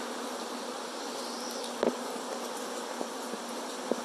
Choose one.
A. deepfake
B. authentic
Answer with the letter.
B